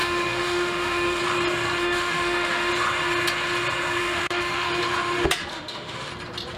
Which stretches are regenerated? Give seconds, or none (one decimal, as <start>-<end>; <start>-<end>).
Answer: 0.0-1.2; 1.8-2.7; 4.0-4.7; 5.5-6.1